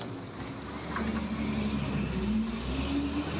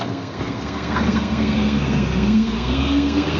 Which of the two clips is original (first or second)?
first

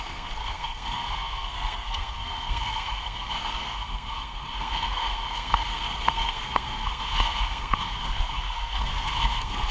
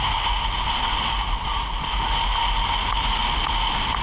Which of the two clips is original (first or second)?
second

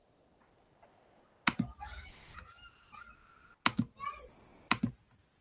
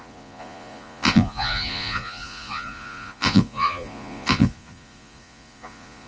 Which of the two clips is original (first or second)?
first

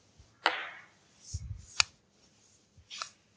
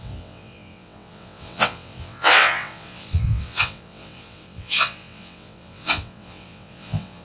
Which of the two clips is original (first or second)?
first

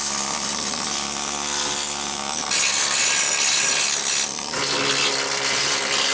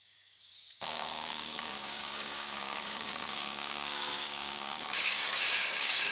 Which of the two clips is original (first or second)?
first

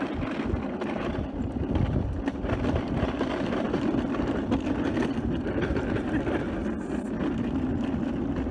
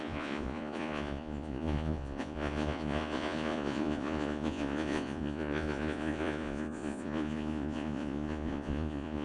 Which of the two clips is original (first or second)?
first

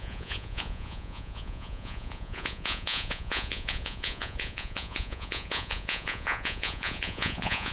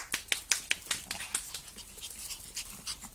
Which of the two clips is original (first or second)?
second